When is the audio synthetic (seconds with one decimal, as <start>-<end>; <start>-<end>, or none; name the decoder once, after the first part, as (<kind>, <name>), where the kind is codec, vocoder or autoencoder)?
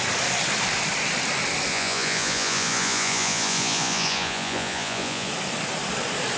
1.7-5.3 (vocoder, Vocos)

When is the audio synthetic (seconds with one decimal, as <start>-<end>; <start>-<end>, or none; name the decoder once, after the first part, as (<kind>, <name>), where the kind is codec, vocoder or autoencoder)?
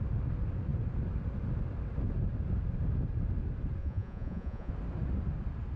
3.8-4.7 (vocoder, Vocos)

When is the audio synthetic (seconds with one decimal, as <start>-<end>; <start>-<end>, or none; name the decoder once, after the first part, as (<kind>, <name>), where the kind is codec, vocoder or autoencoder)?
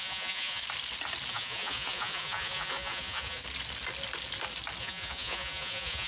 0.0-0.6 (vocoder, Vocos); 1.3-3.4; 4.8-6.1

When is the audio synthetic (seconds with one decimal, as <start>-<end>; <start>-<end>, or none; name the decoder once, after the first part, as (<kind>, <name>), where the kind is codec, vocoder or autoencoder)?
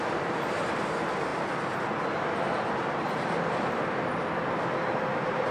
none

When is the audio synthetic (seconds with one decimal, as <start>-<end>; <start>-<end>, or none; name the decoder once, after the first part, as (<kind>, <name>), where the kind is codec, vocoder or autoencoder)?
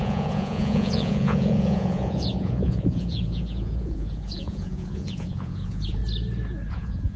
0.0-6.0 (vocoder, Vocos); 6.7-7.2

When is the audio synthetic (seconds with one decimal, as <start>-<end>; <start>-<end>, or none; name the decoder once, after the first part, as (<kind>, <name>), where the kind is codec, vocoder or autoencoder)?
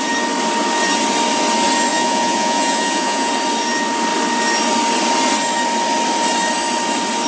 1.9-3.3 (vocoder, Vocos)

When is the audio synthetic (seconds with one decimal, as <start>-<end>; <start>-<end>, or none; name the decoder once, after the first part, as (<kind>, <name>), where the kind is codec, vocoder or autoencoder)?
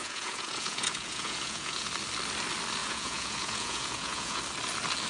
0.0-1.9 (vocoder, Vocos); 2.8-4.4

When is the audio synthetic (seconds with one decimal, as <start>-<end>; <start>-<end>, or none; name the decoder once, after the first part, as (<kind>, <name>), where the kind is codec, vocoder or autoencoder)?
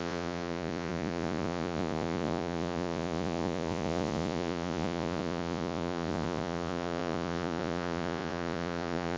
0.0-9.2 (vocoder, Vocos)